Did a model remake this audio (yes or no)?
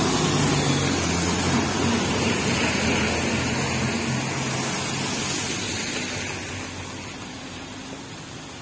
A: no